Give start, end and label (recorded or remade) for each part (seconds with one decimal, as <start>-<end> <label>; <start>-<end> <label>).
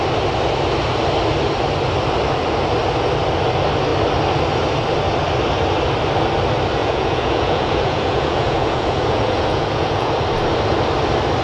0.0-6.8 recorded; 6.8-10.1 remade; 10.1-11.4 recorded